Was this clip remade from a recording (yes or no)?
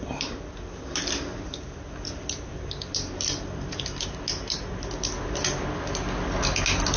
no